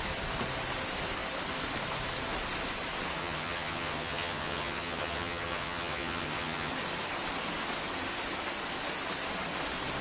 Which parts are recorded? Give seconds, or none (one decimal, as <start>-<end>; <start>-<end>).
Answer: 0.0-3.2; 6.7-10.0